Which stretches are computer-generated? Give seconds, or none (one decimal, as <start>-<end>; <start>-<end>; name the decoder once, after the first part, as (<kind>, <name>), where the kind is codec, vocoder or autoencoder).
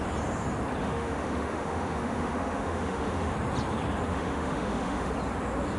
0.8-3.3 (autoencoder, DAC-VAE); 4.1-5.1